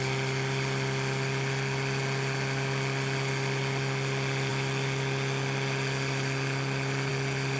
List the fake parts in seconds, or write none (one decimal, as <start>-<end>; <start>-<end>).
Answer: none